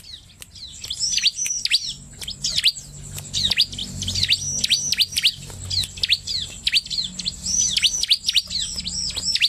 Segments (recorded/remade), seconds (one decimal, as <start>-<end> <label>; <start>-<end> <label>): 0.0-9.5 recorded